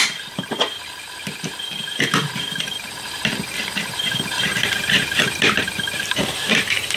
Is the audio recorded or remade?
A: remade